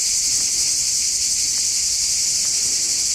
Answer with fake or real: real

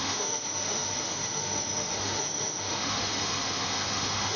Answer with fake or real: fake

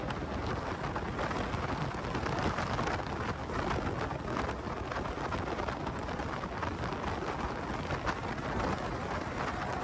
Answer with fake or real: real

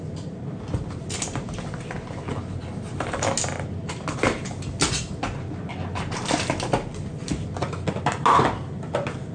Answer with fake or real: real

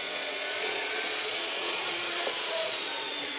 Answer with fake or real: fake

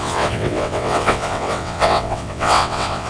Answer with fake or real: fake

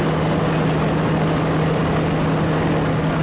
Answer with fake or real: real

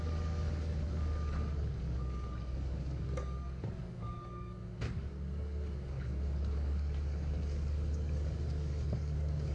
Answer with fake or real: fake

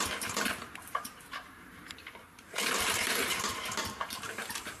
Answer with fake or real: fake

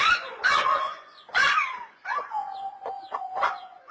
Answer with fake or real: fake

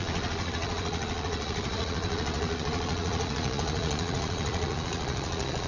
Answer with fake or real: fake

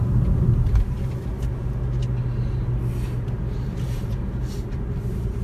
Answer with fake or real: real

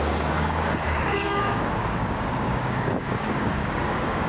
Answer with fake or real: fake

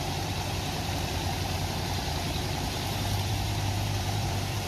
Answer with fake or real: fake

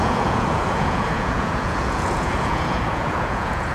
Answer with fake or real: fake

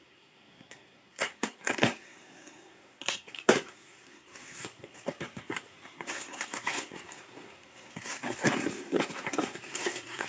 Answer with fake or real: fake